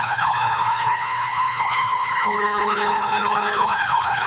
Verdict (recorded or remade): remade